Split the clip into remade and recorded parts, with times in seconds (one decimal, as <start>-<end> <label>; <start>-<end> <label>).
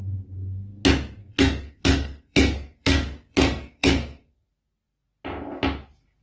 0.0-1.2 recorded; 1.2-4.5 remade; 4.5-6.2 recorded